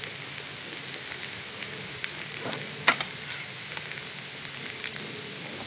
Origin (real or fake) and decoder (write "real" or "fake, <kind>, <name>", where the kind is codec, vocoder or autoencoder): real